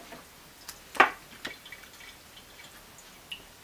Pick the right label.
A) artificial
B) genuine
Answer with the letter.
B